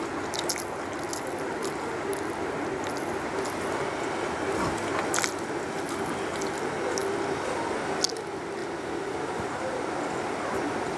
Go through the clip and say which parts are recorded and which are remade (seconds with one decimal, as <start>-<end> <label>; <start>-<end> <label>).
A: 0.0-11.0 recorded